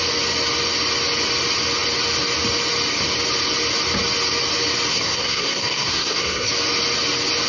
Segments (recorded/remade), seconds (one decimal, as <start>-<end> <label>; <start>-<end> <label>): 0.0-4.9 recorded; 4.9-6.5 remade; 6.5-7.5 recorded